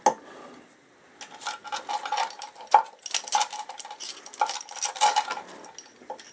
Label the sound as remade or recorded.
recorded